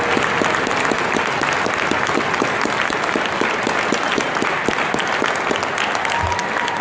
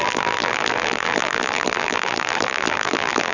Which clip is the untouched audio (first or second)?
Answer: first